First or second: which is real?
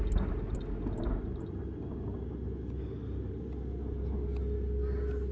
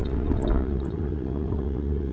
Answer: first